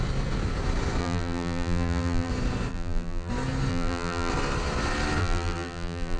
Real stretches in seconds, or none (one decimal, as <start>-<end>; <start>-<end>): 0.0-1.0; 2.3-2.7; 3.3-3.7; 4.3-5.2